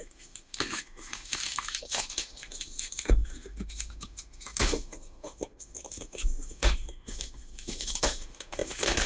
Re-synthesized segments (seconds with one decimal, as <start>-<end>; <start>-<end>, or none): 0.0-9.1